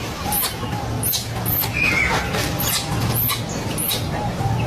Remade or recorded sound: recorded